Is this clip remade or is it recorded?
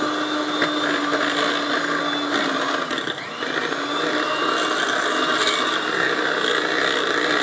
recorded